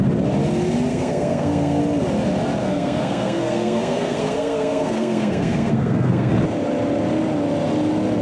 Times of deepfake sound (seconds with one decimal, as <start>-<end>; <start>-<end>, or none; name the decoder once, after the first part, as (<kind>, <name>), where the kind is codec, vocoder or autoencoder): 0.9-1.8 (codec, SNAC); 2.6-6.3